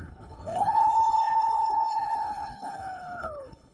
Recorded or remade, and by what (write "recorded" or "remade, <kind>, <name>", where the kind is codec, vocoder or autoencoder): remade, codec, HILCodec